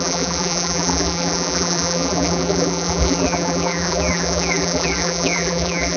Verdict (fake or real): fake